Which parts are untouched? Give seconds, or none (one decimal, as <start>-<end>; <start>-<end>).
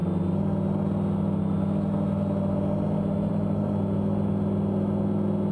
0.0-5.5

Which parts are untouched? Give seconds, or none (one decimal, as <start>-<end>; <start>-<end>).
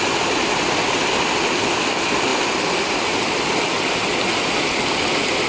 0.0-5.5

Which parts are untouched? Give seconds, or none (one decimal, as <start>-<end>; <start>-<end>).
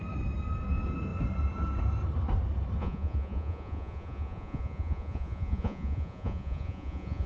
0.0-2.8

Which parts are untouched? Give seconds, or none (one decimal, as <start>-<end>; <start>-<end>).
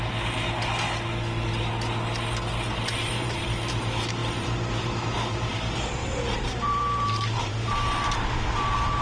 0.0-3.1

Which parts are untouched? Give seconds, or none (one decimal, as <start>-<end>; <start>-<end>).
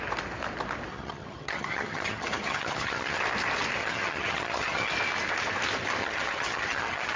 0.0-0.9; 3.2-3.8; 4.9-6.0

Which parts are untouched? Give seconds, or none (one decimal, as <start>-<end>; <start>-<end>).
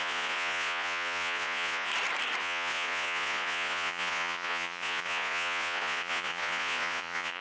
1.9-2.4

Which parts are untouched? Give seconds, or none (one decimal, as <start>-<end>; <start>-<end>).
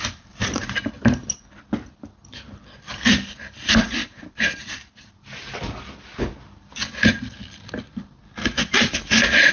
0.0-4.0; 5.5-9.5